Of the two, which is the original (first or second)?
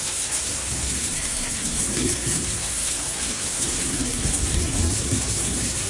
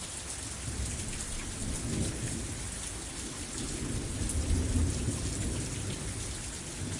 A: second